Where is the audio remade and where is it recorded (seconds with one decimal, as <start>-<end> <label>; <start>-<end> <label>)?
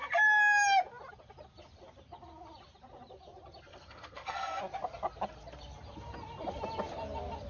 0.0-3.7 recorded; 3.7-4.6 remade; 4.6-7.5 recorded